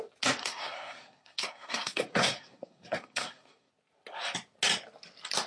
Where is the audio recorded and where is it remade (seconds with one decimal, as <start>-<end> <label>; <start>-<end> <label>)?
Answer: 0.0-0.4 recorded; 0.4-3.7 remade; 3.7-5.5 recorded